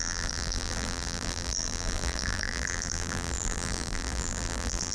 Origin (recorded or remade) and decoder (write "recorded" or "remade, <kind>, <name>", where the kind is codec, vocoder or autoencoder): remade, vocoder, BigVGAN v2